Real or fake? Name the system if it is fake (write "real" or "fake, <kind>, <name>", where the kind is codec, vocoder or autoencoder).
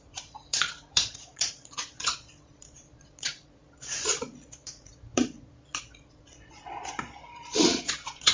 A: fake, vocoder, Vocos